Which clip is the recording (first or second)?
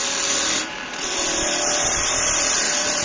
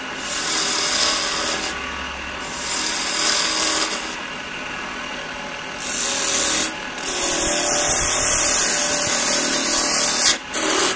second